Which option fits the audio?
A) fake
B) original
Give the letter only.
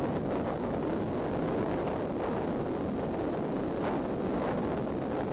B